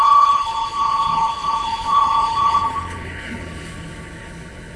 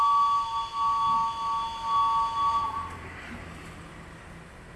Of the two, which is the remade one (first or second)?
first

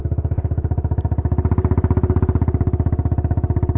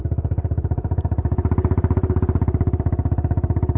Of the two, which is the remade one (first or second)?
second